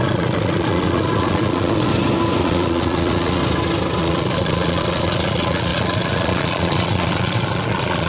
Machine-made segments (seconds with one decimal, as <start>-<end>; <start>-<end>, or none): 0.0-1.9; 2.4-3.4; 4.0-8.1